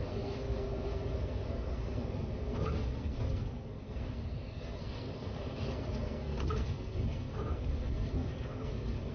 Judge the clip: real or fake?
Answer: fake